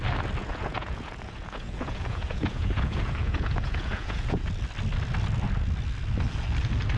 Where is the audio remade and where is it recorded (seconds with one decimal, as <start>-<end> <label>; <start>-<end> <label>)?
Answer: 0.0-0.4 recorded; 0.4-4.5 remade; 4.5-7.0 recorded